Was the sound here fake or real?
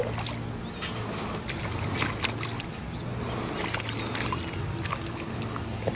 real